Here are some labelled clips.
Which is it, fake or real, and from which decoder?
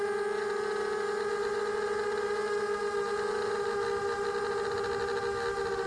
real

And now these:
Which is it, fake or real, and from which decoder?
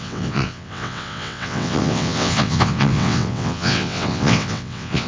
fake, vocoder, WaveNeXt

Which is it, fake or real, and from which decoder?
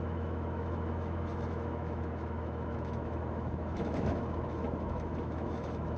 fake, autoencoder, DAC-VAE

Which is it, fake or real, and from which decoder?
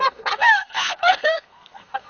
fake, codec, SNAC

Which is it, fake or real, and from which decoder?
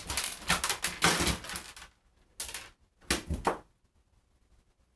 real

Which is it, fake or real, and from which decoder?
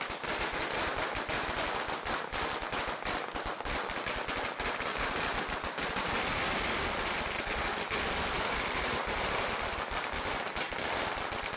real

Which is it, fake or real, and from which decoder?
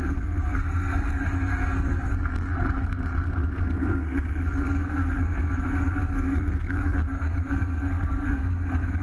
fake, codec, SNAC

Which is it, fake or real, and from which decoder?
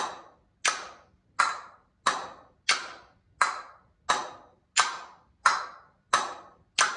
real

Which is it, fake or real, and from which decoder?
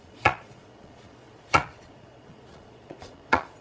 fake, vocoder, Vocos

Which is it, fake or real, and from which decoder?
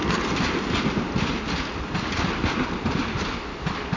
real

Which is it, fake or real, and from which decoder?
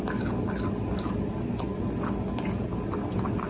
real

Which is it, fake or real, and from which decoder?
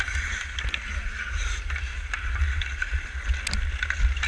real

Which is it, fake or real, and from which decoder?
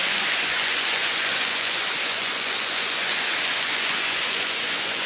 fake, vocoder, Vocos